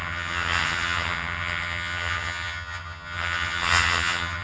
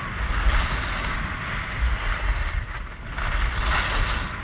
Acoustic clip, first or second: second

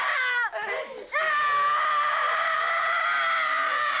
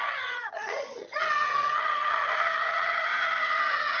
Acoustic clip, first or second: first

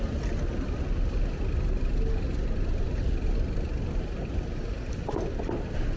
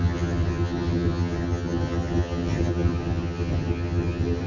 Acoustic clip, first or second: first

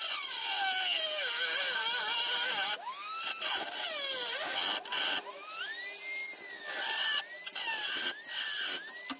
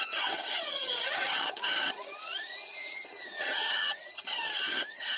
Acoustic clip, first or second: first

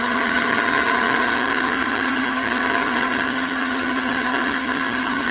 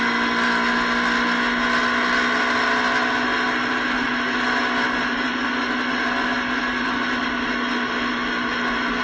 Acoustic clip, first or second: second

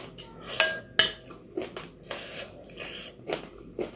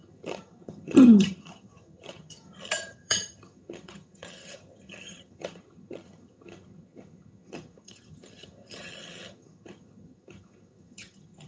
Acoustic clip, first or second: first